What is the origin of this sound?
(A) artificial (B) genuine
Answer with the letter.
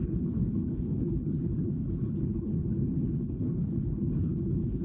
A